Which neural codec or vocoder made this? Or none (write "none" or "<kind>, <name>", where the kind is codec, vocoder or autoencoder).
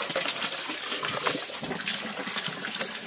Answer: none